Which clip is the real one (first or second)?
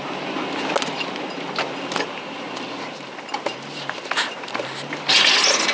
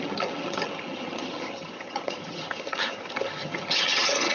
first